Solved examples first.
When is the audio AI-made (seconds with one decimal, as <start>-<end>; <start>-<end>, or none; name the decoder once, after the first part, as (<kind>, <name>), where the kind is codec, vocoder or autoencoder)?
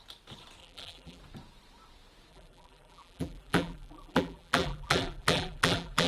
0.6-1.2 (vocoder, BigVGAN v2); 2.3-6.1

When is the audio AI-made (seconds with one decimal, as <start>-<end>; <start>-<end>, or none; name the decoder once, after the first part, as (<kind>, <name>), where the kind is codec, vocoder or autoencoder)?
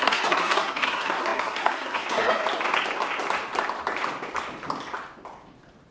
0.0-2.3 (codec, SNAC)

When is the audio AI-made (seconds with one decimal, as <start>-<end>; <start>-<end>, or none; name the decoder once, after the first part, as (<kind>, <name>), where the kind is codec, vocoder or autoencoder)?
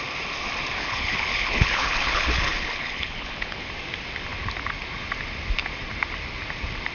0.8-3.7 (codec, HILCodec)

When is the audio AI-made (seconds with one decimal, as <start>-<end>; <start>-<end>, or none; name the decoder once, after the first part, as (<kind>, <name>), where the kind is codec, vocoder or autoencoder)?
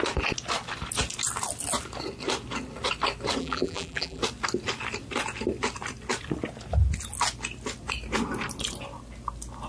3.4-4.2 (vocoder, BigVGAN v2)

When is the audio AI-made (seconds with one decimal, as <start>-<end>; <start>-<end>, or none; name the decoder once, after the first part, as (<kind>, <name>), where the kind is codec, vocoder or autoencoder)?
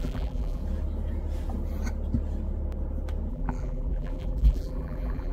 0.0-0.6 (vocoder, BigVGAN v2); 3.3-5.3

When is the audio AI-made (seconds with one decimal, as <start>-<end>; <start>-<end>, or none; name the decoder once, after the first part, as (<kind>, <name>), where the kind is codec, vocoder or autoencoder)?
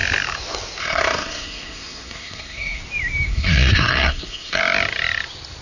0.8-2.8 (codec, SNAC); 3.3-4.6